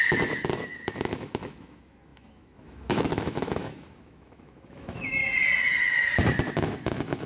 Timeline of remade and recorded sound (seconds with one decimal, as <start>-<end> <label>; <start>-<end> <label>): 0.0-5.2 remade; 5.2-6.5 recorded; 6.5-7.3 remade